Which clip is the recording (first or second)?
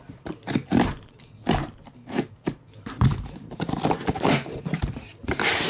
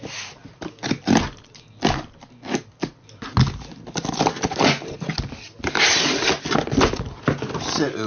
second